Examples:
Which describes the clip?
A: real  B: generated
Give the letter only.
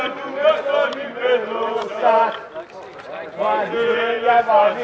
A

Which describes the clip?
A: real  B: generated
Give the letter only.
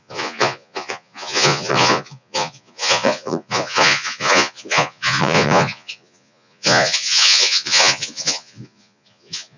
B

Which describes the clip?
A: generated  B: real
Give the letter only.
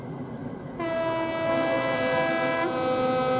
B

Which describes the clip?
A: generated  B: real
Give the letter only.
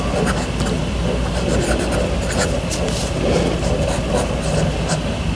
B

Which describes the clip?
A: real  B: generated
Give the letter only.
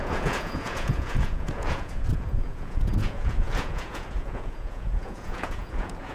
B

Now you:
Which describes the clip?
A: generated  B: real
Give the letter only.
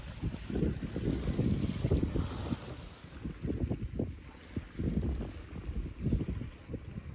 B